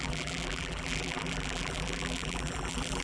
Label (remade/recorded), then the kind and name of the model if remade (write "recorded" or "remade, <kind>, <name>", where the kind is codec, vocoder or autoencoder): remade, vocoder, BigVGAN v2